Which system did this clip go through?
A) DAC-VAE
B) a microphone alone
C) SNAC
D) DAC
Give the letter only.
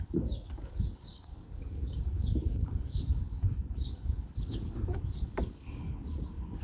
D